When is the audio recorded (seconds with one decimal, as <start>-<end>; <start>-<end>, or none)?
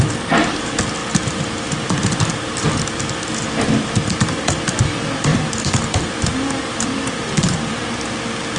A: 0.0-1.0; 2.9-5.3; 7.8-8.6